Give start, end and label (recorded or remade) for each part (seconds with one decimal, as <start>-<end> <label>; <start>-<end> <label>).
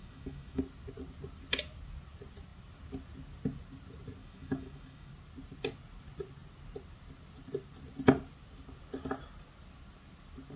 0.0-0.6 remade; 0.6-4.2 recorded; 4.2-5.1 remade; 5.1-10.6 recorded